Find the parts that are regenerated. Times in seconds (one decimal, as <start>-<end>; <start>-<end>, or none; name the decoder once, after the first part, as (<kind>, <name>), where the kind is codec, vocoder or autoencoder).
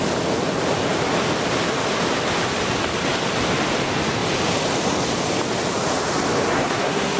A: 6.5-7.2 (codec, SNAC)